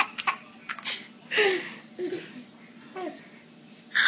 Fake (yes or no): no